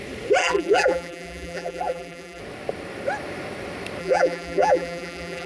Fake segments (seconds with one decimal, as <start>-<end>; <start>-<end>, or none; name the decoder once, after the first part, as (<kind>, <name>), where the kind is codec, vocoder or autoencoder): 0.4-2.4 (vocoder, BigVGAN v2); 4.0-5.5